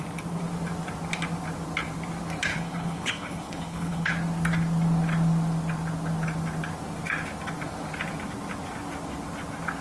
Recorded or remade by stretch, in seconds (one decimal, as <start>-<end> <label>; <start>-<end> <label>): 0.0-2.5 recorded; 2.5-4.1 remade; 4.1-9.8 recorded